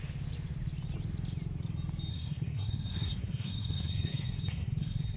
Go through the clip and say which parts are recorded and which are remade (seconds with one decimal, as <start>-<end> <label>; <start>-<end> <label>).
0.0-2.1 recorded; 2.1-5.2 remade